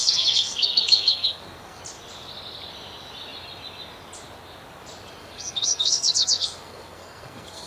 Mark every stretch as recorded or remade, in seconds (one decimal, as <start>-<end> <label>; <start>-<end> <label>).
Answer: 0.0-1.8 remade; 1.8-5.2 recorded; 5.2-7.7 remade